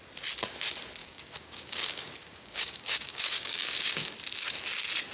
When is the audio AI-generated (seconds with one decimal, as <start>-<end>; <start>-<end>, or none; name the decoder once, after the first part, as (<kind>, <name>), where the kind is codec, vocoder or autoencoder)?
1.0-4.1 (codec, DAC)